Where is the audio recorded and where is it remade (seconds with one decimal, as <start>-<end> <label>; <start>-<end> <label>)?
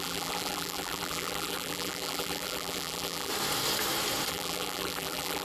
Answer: 0.0-3.3 remade; 3.3-4.3 recorded; 4.3-5.4 remade